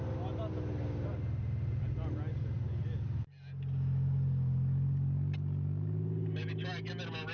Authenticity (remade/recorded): recorded